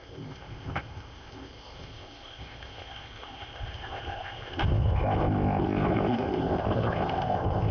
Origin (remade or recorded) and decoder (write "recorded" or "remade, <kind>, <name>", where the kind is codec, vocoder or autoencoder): remade, codec, ZipCodec